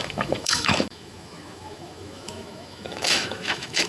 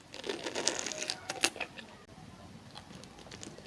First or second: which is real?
second